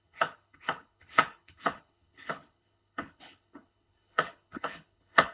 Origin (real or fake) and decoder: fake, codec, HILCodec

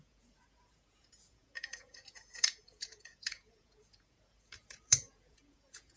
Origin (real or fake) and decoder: fake, vocoder, Vocos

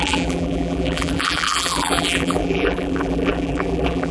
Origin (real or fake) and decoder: fake, vocoder, BigVGAN v2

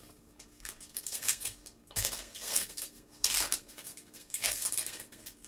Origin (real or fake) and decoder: fake, codec, SNAC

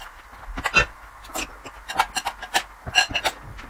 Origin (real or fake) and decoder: real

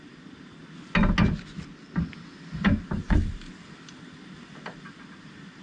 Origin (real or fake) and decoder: real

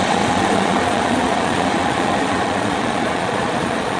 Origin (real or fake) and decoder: fake, vocoder, Vocos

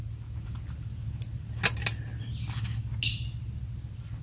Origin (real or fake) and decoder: real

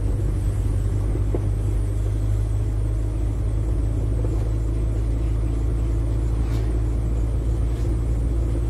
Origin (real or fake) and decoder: real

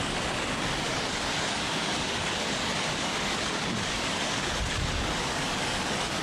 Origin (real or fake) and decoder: fake, codec, DAC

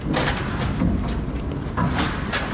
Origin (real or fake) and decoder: real